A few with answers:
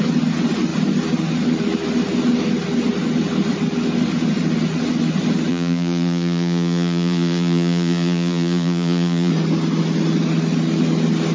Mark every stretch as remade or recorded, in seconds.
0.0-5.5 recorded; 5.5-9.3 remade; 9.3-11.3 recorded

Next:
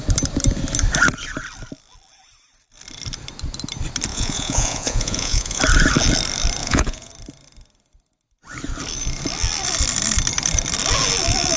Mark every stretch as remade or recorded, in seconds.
0.0-4.1 recorded; 4.1-5.6 remade; 5.6-6.6 recorded; 6.6-7.1 remade; 7.1-11.6 recorded

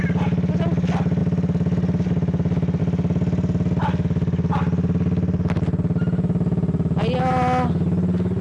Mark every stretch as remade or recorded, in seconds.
0.0-8.4 recorded

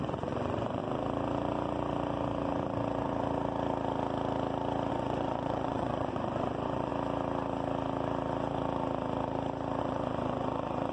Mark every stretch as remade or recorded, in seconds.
0.0-0.8 remade; 0.8-4.9 recorded; 4.9-6.9 remade; 6.9-9.8 recorded; 9.8-10.9 remade

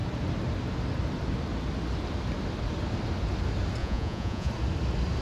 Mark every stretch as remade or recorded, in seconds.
0.0-3.8 recorded; 3.8-4.5 remade; 4.5-5.2 recorded

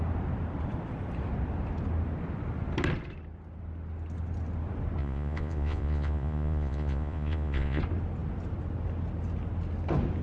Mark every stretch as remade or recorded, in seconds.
0.0-5.0 recorded; 5.0-7.8 remade; 7.8-10.2 recorded

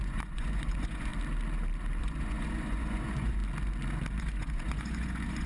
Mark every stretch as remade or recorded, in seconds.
0.0-1.1 remade; 1.1-2.0 recorded; 2.0-3.4 remade; 3.4-4.2 recorded; 4.2-5.5 remade

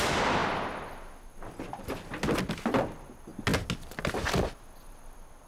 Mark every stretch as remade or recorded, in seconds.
0.0-5.5 recorded